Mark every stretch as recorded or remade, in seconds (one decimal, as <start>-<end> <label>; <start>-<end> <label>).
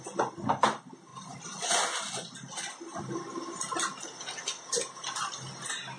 0.0-6.0 recorded